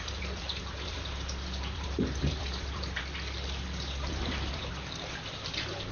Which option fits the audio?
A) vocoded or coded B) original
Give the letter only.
A